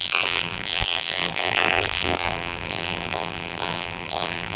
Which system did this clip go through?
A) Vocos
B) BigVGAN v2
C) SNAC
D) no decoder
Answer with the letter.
B